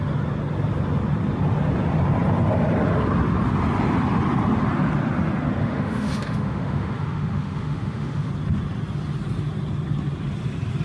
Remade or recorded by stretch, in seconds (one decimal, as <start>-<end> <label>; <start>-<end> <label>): 0.0-5.6 recorded; 5.6-8.3 remade; 8.3-10.8 recorded